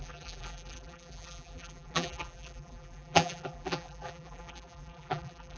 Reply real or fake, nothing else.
fake